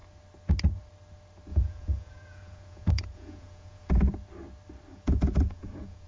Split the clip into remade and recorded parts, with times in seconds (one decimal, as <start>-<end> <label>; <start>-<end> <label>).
0.0-1.5 recorded; 1.5-4.0 remade; 4.0-4.9 recorded; 4.9-6.1 remade